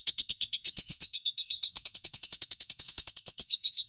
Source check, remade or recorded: remade